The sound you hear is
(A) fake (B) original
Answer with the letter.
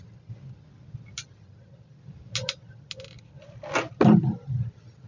B